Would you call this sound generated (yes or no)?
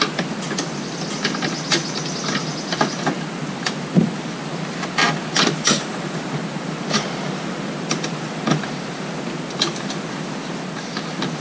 no